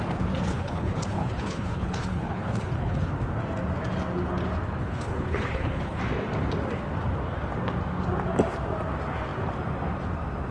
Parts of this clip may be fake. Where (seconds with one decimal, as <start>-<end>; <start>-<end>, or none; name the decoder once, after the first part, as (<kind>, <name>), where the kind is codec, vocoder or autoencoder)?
0.5-3.1 (codec, HILCodec); 4.8-6.0

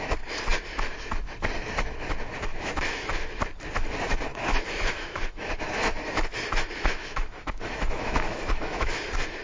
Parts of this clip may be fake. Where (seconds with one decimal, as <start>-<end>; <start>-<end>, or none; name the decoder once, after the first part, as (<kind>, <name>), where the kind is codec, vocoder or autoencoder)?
2.5-3.4 (autoencoder, DAC-VAE); 4.3-9.0

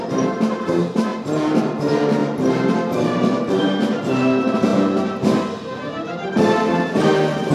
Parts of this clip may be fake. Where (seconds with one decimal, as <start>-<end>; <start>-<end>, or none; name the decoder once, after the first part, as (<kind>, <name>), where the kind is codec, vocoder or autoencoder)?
0.0-4.7 (vocoder, BigVGAN v2); 7.0-7.5

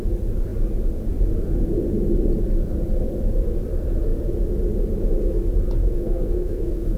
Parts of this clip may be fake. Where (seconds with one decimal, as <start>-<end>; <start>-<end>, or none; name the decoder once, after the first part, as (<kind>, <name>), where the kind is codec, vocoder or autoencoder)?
5.8-7.0 (codec, SNAC)

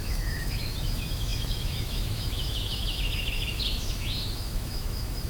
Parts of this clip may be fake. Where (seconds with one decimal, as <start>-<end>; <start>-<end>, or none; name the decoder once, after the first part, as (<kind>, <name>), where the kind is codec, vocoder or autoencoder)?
0.0-5.3 (autoencoder, DAC-VAE)

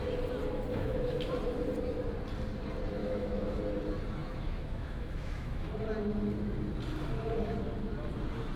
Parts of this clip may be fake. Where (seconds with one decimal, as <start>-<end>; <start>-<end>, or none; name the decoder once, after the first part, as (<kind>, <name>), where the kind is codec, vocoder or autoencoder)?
0.7-1.3 (autoencoder, DAC-VAE); 3.0-3.6; 4.2-5.7

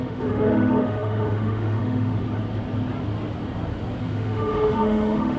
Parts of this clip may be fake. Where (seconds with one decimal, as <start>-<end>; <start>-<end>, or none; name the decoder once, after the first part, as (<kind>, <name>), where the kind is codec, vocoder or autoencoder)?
0.0-2.2 (autoencoder, DAC-VAE); 4.0-5.4

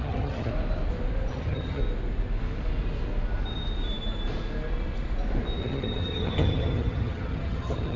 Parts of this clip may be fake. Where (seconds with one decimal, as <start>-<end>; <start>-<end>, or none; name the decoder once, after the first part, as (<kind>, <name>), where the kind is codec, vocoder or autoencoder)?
0.0-0.5 (vocoder, HiFi-GAN); 1.3-1.8; 5.6-8.0